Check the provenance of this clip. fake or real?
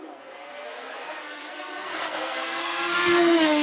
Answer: fake